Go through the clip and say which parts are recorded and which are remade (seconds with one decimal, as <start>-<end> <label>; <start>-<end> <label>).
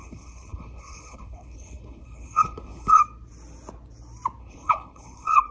0.0-3.0 remade; 3.0-4.4 recorded; 4.4-5.5 remade